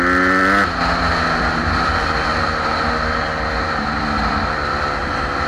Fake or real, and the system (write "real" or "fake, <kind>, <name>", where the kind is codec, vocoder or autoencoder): real